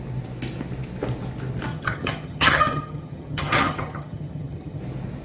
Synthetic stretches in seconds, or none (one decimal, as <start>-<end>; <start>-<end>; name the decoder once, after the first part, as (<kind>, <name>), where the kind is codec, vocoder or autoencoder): 1.7-4.8 (vocoder, HiFi-GAN)